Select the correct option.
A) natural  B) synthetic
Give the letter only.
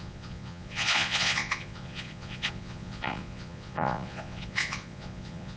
B